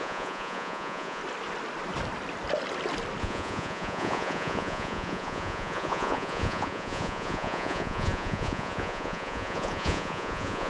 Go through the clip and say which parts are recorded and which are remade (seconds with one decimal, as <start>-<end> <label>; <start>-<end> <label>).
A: 0.0-1.2 remade; 1.2-3.2 recorded; 3.2-10.7 remade